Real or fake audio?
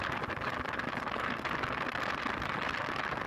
real